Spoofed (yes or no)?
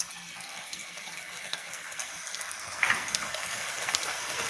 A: yes